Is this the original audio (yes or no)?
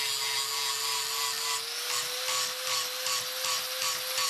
yes